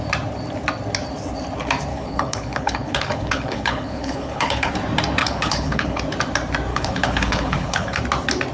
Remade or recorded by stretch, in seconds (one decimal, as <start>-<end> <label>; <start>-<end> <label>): 0.0-1.9 recorded; 1.9-4.7 remade; 4.7-5.2 recorded; 5.2-6.0 remade; 6.0-6.7 recorded; 6.7-8.0 remade; 8.0-8.5 recorded